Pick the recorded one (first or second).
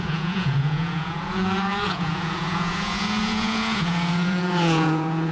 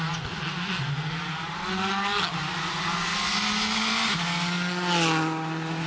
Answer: second